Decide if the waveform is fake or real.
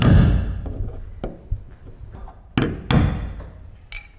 real